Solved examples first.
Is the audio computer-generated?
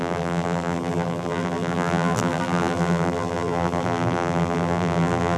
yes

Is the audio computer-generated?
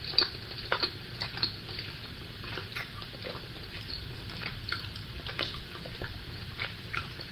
yes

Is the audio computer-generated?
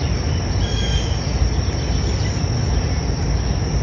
no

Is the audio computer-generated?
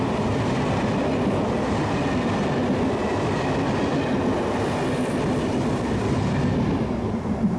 no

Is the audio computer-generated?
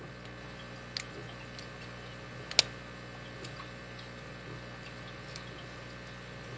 no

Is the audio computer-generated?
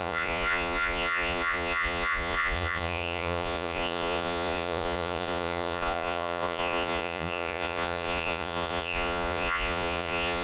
yes